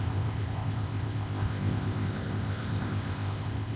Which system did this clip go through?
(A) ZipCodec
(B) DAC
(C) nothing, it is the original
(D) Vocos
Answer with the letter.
A